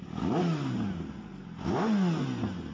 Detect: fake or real real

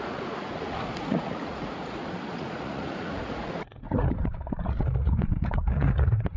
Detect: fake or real fake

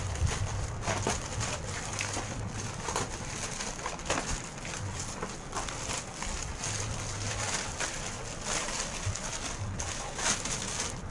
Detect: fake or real real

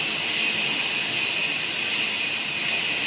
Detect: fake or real real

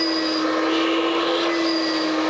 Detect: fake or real real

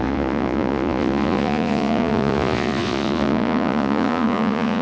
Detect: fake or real fake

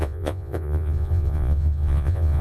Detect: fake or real fake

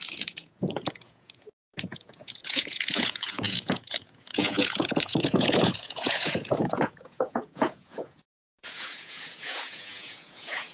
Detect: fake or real fake